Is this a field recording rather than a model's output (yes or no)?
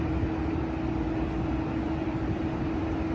yes